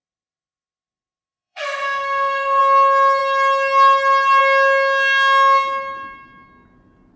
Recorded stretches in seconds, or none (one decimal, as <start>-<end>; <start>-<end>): 2.6-7.2